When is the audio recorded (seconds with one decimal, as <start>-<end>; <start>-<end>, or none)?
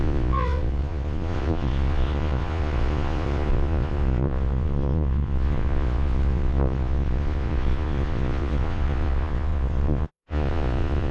none